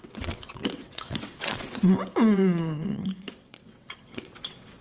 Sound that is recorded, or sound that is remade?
remade